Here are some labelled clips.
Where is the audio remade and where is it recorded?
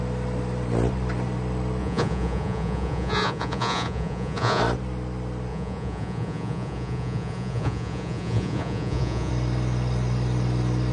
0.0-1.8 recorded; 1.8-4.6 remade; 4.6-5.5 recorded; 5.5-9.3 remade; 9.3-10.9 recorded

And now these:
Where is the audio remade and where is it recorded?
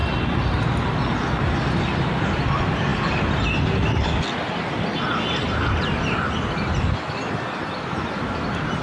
0.0-8.8 recorded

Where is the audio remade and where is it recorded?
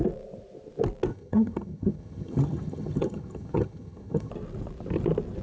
0.0-1.1 recorded; 1.1-4.3 remade; 4.3-5.4 recorded